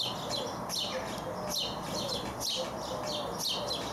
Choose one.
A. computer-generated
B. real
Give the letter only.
B